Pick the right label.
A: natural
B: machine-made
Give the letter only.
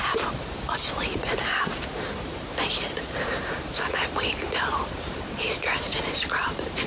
B